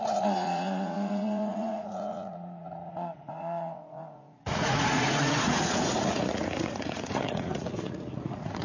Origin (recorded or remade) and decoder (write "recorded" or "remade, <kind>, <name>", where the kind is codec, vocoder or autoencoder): remade, vocoder, Vocos